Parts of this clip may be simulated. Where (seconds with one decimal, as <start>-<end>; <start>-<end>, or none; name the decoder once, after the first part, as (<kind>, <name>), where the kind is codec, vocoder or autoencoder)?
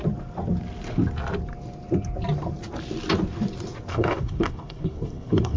3.9-5.6 (codec, HILCodec)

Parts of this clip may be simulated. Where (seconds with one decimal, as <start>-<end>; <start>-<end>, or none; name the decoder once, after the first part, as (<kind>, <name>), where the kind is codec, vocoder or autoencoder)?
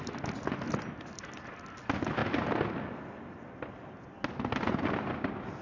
none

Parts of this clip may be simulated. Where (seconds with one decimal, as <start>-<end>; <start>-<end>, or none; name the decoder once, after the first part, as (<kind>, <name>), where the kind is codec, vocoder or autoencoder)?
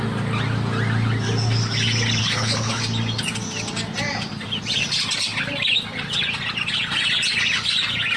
2.2-2.8 (codec, HILCodec)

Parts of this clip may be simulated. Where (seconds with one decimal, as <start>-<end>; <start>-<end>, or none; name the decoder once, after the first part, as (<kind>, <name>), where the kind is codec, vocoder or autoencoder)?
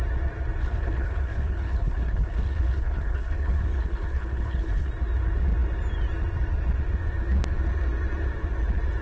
0.6-4.9 (codec, HILCodec)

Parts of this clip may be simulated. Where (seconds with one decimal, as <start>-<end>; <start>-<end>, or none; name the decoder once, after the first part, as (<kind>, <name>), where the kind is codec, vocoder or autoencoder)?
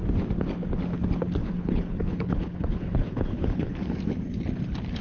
1.4-4.0 (codec, HILCodec)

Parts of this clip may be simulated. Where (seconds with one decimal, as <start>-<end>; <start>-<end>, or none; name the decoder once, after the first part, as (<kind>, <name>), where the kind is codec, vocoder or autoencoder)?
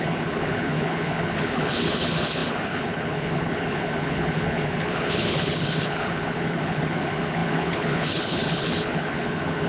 0.0-9.7 (codec, HILCodec)